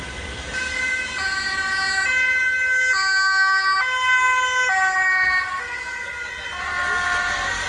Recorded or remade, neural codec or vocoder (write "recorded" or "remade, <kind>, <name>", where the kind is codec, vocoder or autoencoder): recorded